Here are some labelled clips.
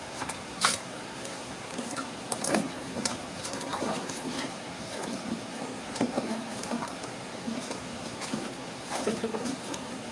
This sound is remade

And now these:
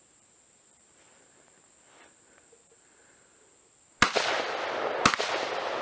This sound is recorded